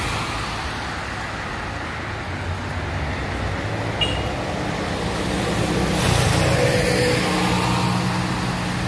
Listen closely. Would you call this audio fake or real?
real